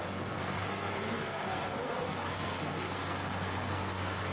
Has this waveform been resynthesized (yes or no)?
yes